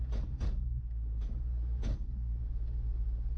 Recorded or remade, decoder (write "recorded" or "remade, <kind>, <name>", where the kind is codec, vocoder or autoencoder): recorded